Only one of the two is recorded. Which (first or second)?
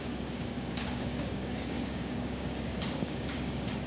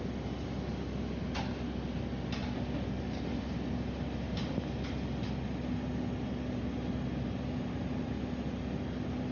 second